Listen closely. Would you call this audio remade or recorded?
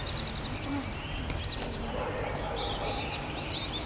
recorded